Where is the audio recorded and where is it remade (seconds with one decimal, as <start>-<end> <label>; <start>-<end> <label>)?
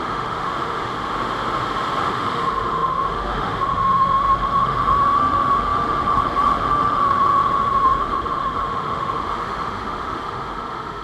0.0-0.9 remade; 0.9-2.0 recorded; 2.0-11.0 remade